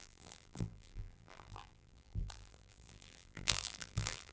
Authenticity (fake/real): fake